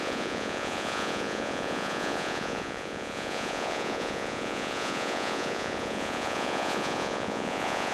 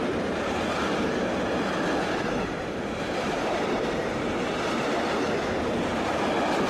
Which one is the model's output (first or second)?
first